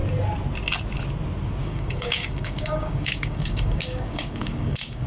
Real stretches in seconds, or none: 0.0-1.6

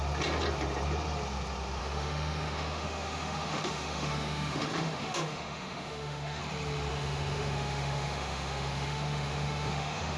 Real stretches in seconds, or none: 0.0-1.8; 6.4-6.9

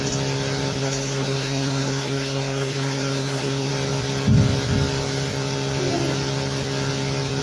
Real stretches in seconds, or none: 0.0-0.8; 3.7-7.4

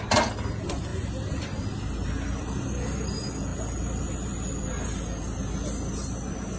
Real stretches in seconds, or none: 0.0-6.6